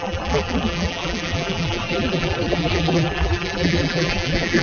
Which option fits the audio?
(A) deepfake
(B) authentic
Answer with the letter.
A